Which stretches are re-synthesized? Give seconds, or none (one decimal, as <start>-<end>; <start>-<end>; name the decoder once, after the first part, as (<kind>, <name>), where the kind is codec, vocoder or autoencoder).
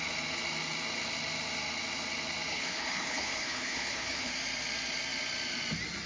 2.5-4.3 (codec, HILCodec)